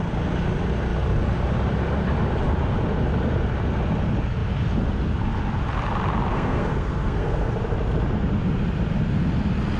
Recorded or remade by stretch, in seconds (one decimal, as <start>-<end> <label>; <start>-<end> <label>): 0.0-6.3 recorded; 6.3-7.5 remade; 7.5-9.8 recorded